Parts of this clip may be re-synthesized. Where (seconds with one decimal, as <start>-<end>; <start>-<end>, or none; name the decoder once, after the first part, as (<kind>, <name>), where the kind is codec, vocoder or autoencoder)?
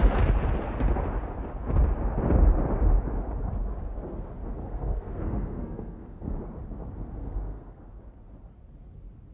4.6-6.4 (codec, SNAC); 7.2-7.8